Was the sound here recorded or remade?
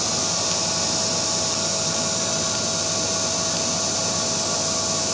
recorded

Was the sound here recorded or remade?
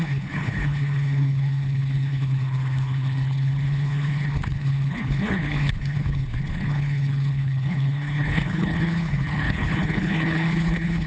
remade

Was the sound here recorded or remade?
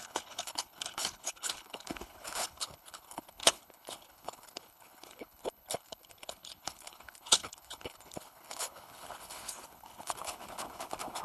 remade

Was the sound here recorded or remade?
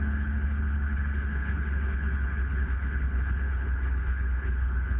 remade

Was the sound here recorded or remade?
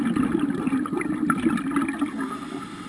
recorded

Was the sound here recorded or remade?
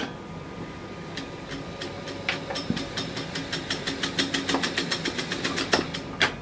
recorded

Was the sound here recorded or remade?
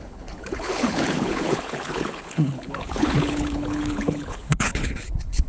remade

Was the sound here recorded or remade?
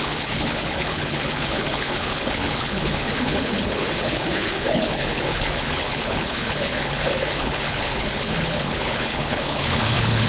remade